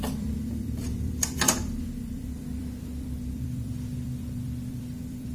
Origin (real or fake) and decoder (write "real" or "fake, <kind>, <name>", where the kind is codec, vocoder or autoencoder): fake, vocoder, BigVGAN v2